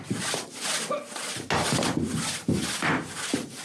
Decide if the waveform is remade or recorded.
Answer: recorded